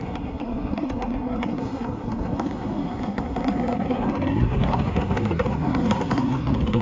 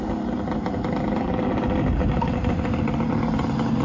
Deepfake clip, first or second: first